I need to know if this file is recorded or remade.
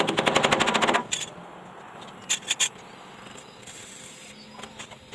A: recorded